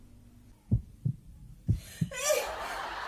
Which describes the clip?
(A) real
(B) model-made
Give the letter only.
B